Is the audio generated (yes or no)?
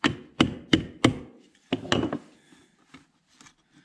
no